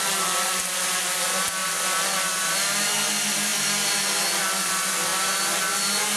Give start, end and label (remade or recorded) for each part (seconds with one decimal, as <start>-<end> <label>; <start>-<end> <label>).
0.0-6.2 recorded